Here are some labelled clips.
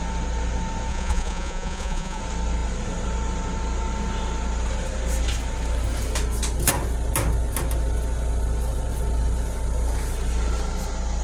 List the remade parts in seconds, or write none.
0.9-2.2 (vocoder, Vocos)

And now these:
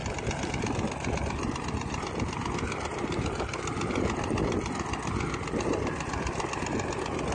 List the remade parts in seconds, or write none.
none

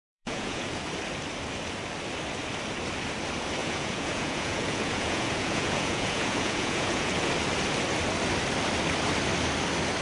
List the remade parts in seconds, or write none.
0.0-0.8 (vocoder, Vocos); 3.6-7.1

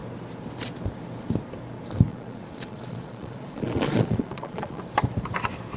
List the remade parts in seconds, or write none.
2.1-4.8 (vocoder, Vocos)

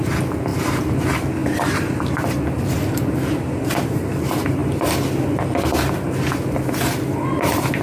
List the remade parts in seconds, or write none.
none